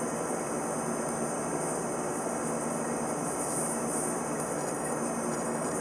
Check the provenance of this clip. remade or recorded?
recorded